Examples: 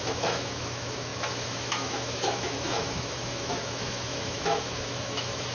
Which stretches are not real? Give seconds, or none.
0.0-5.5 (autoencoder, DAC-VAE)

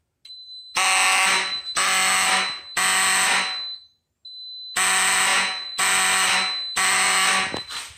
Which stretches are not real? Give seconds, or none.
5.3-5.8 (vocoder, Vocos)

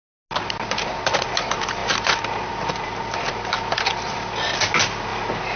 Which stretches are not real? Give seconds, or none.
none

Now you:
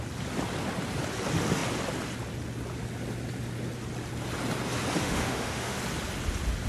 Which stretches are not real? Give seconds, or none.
5.0-5.8 (autoencoder, DAC-VAE)

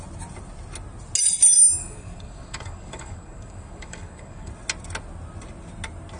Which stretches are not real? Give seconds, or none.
1.8-4.5 (codec, DAC)